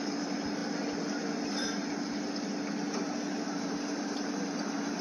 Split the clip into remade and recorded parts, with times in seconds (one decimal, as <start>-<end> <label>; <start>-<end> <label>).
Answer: 0.0-0.6 remade; 0.6-3.6 recorded; 3.6-5.0 remade